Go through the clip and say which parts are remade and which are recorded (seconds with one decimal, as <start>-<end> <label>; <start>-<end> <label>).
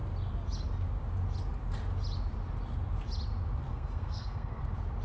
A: 0.0-3.7 recorded; 3.7-4.6 remade; 4.6-5.0 recorded